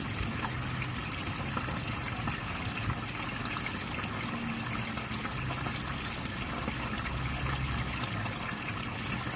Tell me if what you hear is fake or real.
real